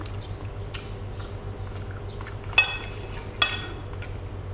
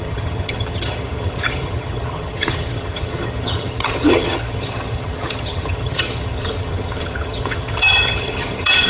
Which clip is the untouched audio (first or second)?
first